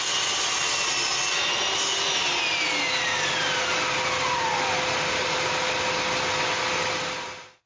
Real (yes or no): yes